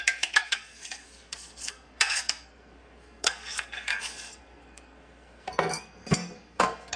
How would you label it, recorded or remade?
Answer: remade